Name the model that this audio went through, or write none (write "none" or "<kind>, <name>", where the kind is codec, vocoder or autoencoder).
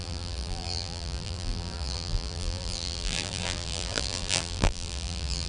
vocoder, BigVGAN v2